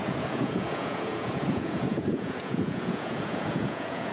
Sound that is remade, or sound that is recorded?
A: remade